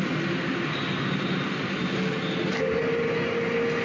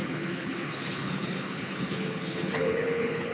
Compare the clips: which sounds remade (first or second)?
second